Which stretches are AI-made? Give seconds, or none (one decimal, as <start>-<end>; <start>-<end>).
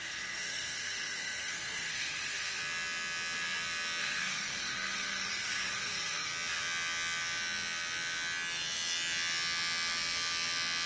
0.0-2.6; 4.0-6.3